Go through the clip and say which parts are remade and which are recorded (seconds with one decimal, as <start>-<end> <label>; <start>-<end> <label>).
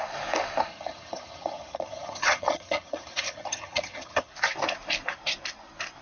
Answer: 0.0-0.7 recorded; 0.7-4.3 remade; 4.3-6.0 recorded